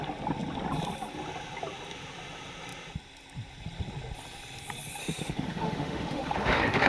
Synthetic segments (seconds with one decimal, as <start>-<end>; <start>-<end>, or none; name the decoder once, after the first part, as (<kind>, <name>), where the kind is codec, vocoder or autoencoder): 5.0-6.9 (autoencoder, DAC-VAE)